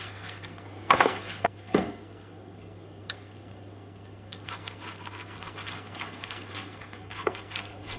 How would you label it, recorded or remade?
remade